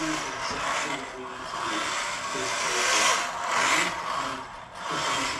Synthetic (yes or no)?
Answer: no